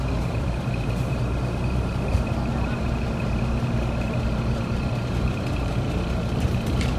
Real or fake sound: fake